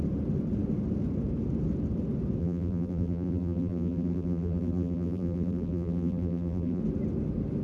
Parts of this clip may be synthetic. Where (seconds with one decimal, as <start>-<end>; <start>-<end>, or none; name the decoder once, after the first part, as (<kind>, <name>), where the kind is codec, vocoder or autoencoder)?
2.4-6.8 (vocoder, BigVGAN v2)